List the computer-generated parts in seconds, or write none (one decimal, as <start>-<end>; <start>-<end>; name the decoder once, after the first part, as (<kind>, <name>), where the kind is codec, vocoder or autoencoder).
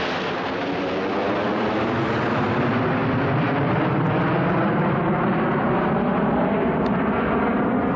none